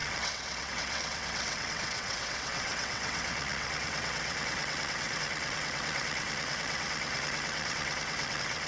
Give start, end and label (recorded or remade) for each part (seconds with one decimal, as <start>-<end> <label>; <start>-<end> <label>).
0.0-8.7 remade